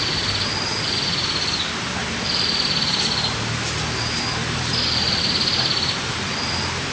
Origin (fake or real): real